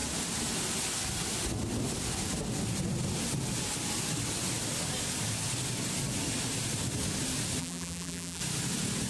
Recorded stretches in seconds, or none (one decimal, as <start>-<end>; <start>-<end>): 0.0-7.6; 8.4-9.1